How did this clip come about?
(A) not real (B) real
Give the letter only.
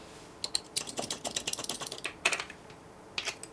B